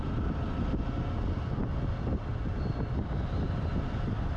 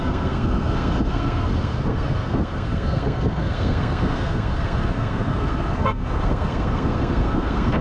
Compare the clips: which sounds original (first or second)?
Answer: first